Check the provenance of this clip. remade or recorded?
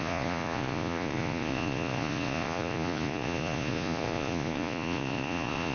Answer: remade